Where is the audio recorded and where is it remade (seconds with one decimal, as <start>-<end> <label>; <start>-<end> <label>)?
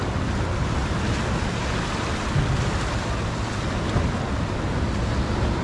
0.0-5.6 recorded